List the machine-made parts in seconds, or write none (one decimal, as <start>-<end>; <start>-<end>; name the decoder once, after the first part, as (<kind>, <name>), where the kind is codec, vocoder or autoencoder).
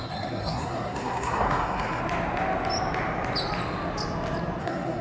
0.0-2.0 (codec, SNAC); 4.6-5.0